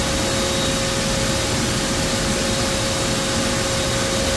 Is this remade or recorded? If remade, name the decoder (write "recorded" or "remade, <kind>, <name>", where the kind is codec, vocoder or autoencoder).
recorded